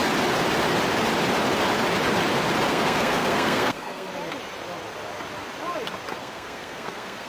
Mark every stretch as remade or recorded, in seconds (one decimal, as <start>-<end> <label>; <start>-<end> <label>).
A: 0.0-2.7 recorded; 2.7-4.1 remade; 4.1-6.2 recorded; 6.2-7.3 remade

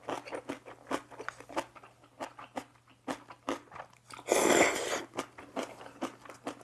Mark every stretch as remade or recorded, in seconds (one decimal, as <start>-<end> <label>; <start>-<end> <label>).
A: 0.0-6.6 recorded

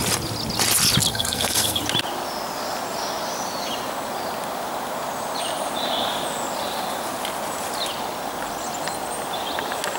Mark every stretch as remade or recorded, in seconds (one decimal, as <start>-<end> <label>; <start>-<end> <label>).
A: 0.0-1.1 recorded; 1.1-1.8 remade; 1.8-10.0 recorded

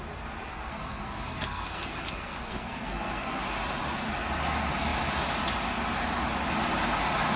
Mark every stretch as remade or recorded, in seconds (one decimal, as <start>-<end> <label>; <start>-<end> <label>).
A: 0.0-0.5 recorded; 0.5-3.4 remade; 3.4-7.4 recorded

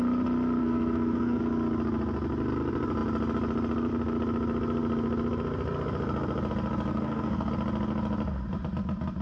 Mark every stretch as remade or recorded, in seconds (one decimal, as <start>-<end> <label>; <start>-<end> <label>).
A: 0.0-0.6 recorded; 0.6-1.4 remade; 1.4-6.9 recorded; 6.9-7.5 remade; 7.5-9.2 recorded

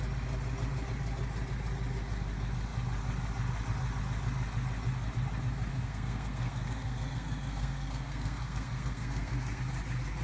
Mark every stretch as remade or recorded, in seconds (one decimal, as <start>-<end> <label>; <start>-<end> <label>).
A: 0.0-5.7 recorded; 5.7-9.6 remade; 9.6-10.2 recorded

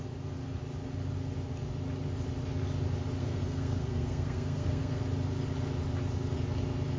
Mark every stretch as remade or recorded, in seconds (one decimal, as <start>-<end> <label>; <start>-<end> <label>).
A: 0.0-3.2 recorded; 3.2-5.0 remade; 5.0-7.0 recorded

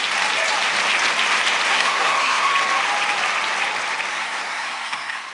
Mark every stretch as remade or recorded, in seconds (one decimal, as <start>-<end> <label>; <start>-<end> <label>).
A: 0.0-1.7 recorded; 1.7-2.5 remade; 2.5-4.1 recorded; 4.1-5.3 remade